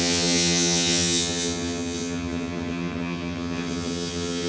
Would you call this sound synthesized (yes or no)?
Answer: yes